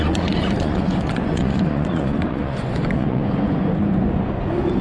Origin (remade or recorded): remade